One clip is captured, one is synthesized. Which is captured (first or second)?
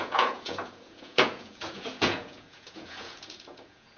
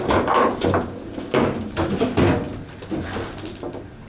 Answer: second